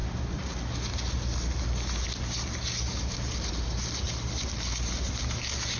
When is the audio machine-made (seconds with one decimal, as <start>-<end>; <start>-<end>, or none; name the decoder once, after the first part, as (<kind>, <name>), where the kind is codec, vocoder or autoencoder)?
none